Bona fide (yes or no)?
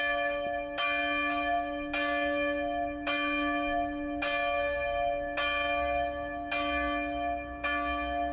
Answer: yes